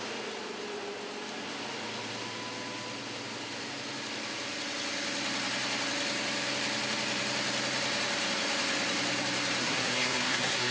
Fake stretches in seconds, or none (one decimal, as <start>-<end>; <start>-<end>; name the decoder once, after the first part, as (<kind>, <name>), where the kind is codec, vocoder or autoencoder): 9.6-10.7 (codec, SNAC)